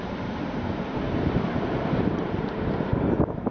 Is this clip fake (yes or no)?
yes